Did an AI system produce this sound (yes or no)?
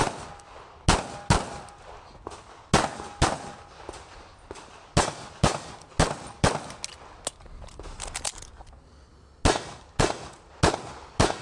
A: no